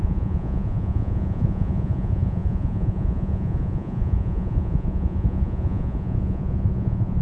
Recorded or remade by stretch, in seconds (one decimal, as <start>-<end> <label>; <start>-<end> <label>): 0.0-7.2 remade